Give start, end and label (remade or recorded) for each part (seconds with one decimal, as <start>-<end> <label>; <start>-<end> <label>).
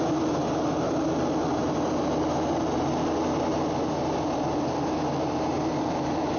0.0-6.4 recorded